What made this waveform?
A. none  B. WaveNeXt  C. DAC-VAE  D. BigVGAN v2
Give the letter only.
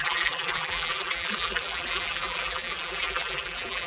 D